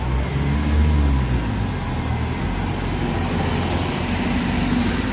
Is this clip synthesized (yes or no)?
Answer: no